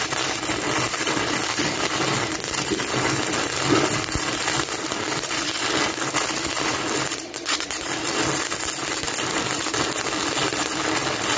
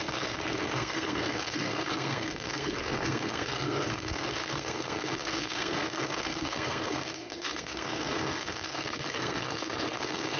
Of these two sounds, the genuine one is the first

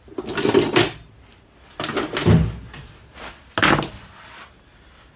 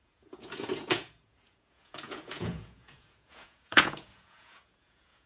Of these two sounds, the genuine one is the first